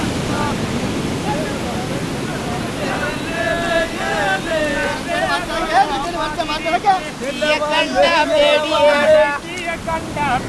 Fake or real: real